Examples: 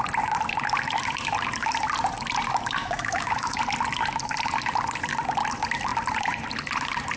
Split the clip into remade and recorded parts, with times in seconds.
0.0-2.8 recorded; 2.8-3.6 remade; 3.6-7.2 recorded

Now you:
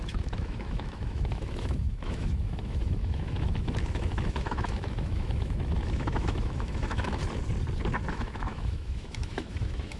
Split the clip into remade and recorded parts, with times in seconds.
0.0-7.2 remade; 7.2-8.1 recorded; 8.1-10.0 remade